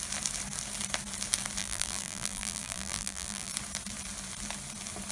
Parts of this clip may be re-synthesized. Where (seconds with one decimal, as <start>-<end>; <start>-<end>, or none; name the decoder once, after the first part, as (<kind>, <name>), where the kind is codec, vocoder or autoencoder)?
1.6-3.5 (vocoder, BigVGAN v2)